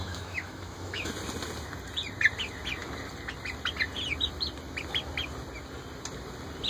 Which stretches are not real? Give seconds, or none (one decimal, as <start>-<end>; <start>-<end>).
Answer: 0.0-1.1